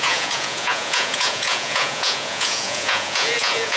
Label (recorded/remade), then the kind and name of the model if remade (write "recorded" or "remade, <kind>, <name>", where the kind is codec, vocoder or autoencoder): remade, vocoder, Vocos